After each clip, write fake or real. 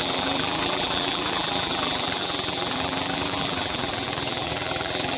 fake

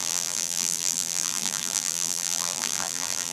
fake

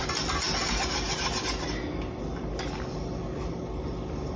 real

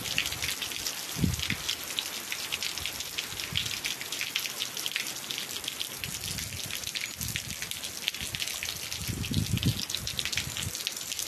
real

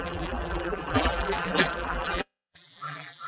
fake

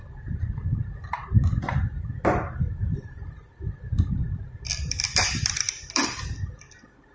fake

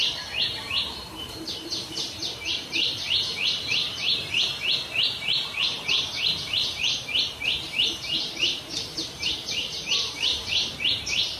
fake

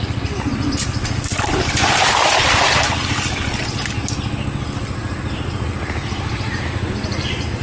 real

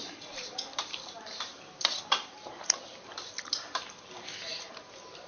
fake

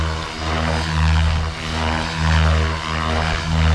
real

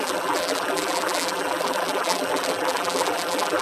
fake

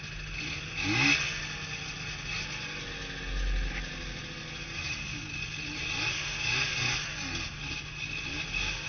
real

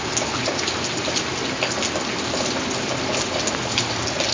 real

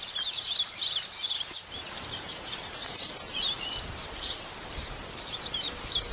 fake